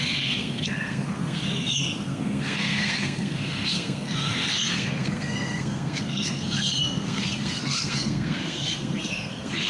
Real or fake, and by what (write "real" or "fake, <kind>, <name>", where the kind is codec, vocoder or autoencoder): fake, codec, SNAC